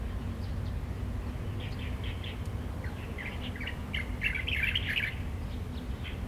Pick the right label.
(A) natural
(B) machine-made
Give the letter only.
A